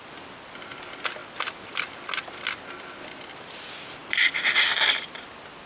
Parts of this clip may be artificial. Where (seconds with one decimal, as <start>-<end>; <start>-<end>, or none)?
none